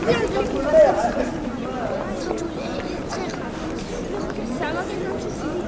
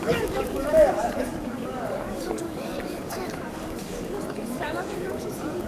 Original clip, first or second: first